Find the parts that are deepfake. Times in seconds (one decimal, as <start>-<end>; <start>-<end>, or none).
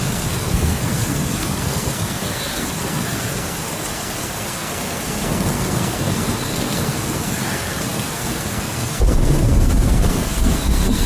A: 0.0-11.1